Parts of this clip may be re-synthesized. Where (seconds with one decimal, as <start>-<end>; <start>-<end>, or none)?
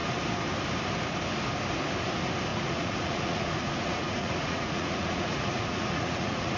2.5-6.6